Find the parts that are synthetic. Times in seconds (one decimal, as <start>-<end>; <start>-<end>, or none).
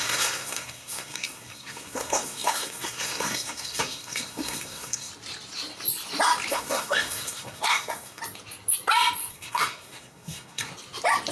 0.0-5.1; 6.5-8.2; 9.3-10.7